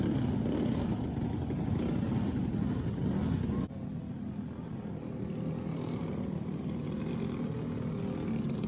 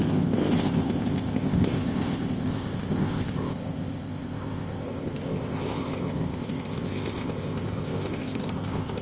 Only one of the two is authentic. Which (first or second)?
first